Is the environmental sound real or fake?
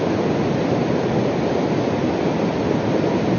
real